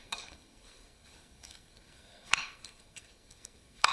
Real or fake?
fake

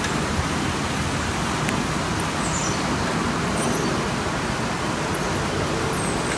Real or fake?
real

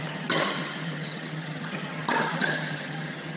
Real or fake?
fake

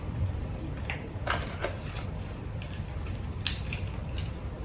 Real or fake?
real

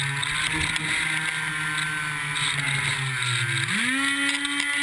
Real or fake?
real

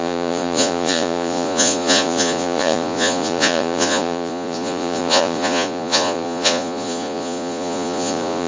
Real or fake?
fake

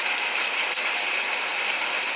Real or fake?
real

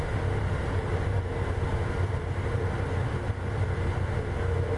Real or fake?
real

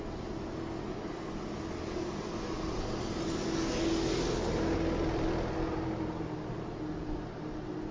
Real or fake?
real